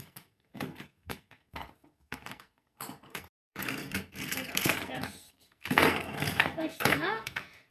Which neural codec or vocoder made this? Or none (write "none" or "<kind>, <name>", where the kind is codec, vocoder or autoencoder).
codec, SNAC